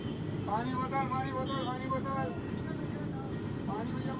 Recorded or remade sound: recorded